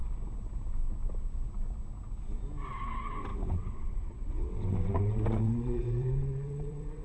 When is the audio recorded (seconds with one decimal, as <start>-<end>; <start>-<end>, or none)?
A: 0.0-2.7